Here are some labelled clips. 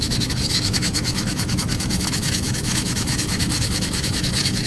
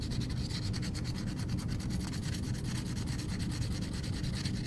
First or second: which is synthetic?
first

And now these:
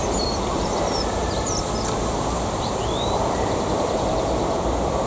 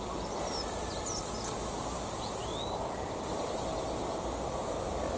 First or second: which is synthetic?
first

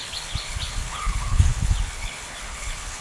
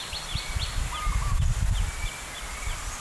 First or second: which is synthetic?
first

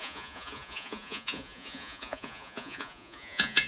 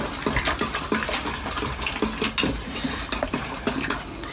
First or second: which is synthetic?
first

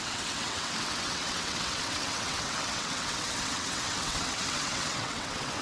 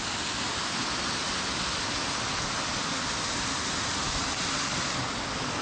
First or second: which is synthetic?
first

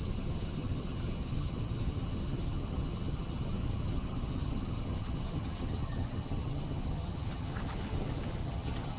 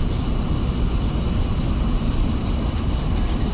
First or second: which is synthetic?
first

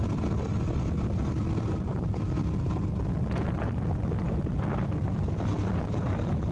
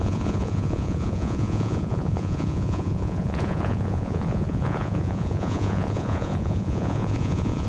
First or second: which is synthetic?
second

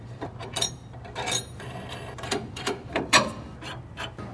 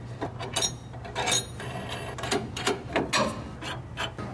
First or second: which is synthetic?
first